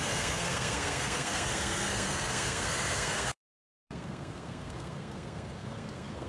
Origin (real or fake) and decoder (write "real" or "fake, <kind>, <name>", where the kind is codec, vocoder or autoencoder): fake, codec, SNAC